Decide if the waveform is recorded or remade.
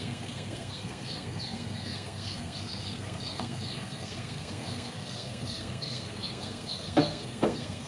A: remade